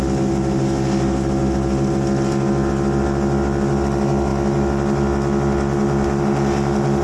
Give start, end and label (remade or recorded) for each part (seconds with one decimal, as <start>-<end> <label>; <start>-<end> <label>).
0.0-7.0 recorded